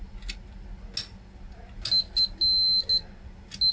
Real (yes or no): yes